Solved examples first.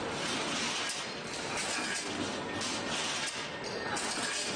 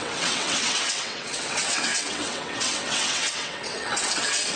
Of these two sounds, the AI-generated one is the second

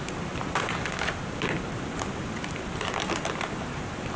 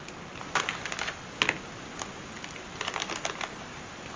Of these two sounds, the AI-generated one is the first